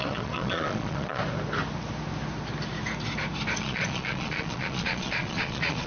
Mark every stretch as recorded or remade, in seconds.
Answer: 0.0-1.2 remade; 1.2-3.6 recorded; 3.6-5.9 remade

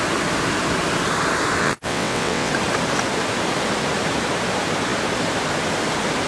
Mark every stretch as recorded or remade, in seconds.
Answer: 0.0-1.6 recorded; 1.6-2.5 remade; 2.5-6.3 recorded

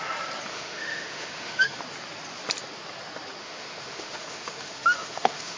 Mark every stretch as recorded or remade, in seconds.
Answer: 0.0-0.5 recorded; 0.5-1.8 remade; 1.8-3.4 recorded; 3.4-5.6 remade

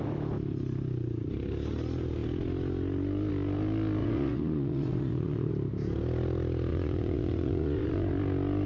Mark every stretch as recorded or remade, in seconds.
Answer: 0.0-4.0 recorded; 4.0-5.5 remade; 5.5-6.7 recorded; 6.7-8.1 remade; 8.1-8.7 recorded

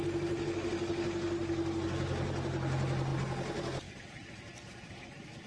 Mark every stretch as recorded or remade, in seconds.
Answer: 0.0-5.5 recorded

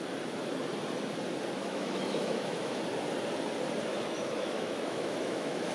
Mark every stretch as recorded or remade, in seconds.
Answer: 0.0-1.6 recorded; 1.6-2.8 remade; 2.8-3.9 recorded; 3.9-5.7 remade

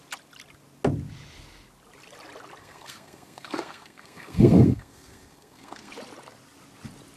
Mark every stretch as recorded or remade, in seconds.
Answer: 0.0-2.6 recorded; 2.6-5.9 remade; 5.9-7.2 recorded

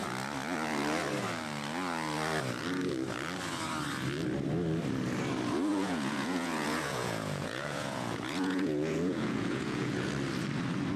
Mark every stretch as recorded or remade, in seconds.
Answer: 0.0-5.7 recorded; 5.7-10.1 remade; 10.1-11.0 recorded